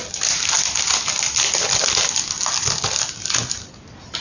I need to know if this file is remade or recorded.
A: recorded